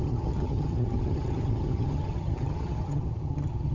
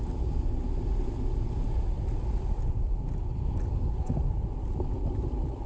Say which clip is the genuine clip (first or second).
second